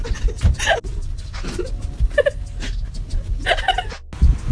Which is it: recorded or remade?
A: recorded